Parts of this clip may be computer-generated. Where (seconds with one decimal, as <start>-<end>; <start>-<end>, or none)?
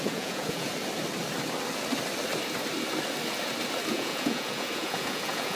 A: 0.0-0.7; 3.9-5.6